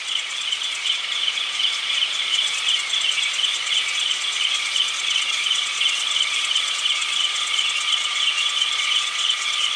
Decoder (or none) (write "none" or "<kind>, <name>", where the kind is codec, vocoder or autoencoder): vocoder, Vocos